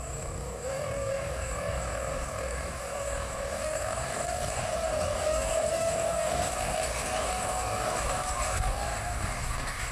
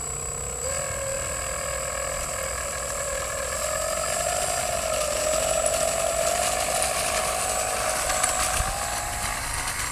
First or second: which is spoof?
first